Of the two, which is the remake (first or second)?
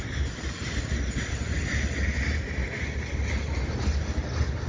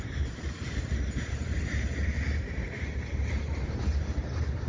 second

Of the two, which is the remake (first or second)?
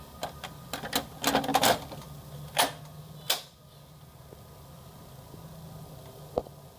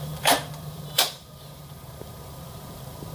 second